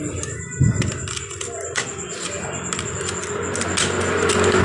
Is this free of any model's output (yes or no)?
yes